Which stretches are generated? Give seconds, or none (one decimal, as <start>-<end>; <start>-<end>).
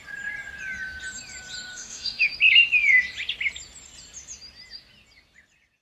1.7-2.3